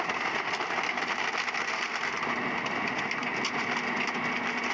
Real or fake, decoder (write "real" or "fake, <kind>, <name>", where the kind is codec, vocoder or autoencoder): real